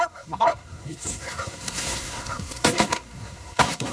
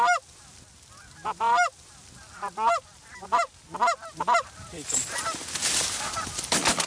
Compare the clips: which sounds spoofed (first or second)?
first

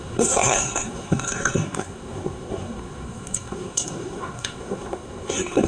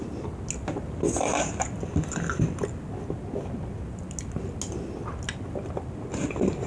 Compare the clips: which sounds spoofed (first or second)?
first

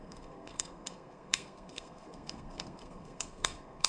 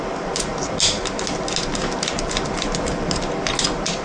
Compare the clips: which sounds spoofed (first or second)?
first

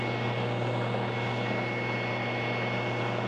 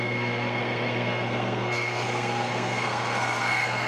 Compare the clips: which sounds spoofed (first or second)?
second